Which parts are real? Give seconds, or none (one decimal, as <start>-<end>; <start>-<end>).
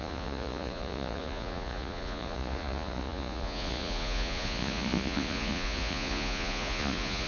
none